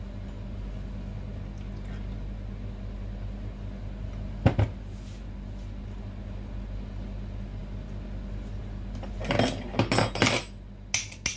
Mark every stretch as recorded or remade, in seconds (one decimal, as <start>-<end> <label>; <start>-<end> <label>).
0.0-11.4 recorded